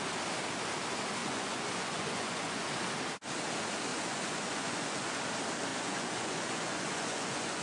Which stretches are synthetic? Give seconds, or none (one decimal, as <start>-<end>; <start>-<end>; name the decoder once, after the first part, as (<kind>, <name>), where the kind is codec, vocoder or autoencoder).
1.2-2.7 (vocoder, Vocos); 3.9-5.2; 5.7-7.6